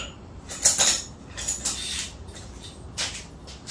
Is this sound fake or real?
real